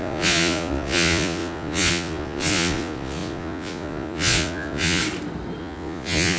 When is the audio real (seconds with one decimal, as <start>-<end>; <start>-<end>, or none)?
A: 5.0-5.6